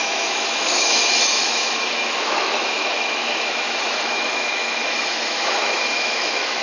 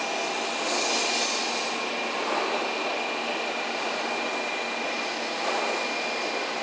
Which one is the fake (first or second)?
first